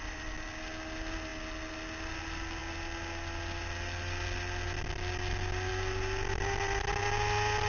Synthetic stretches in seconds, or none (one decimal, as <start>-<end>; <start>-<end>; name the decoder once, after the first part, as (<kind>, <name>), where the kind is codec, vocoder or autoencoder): none